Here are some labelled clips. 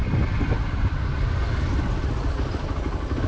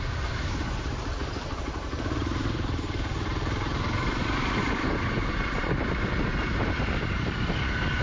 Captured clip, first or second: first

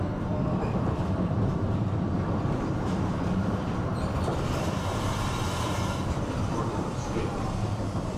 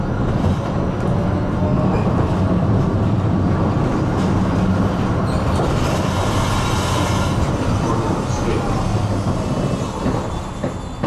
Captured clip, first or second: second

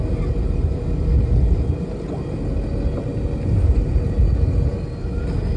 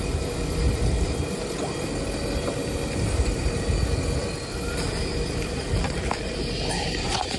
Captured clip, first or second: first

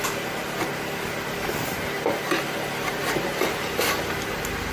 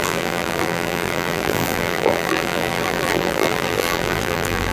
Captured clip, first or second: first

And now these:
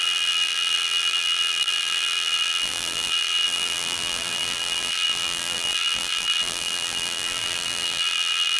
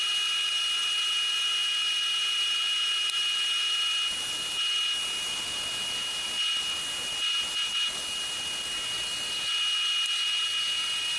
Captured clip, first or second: second